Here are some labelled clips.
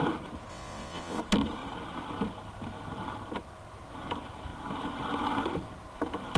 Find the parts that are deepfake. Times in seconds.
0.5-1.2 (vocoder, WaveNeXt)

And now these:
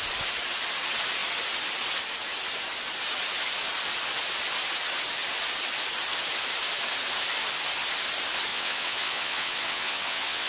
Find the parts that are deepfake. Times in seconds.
8.5-10.5 (vocoder, WaveNeXt)

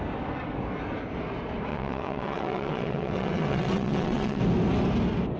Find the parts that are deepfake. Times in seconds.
1.7-4.4 (vocoder, WaveNeXt)

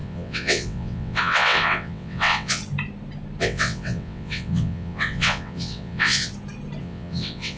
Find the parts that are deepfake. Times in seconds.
0.0-2.6 (vocoder, WaveNeXt); 3.4-6.3; 6.8-7.6

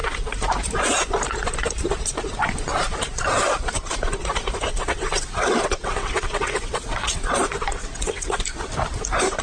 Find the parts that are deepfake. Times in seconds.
4.7-7.2 (vocoder, WaveNeXt); 7.8-8.4

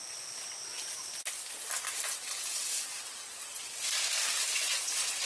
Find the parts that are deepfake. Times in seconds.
none